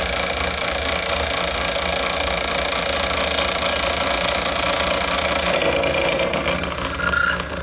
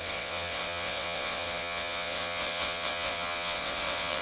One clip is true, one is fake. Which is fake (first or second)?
second